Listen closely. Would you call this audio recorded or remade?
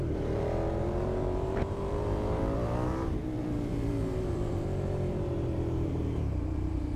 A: remade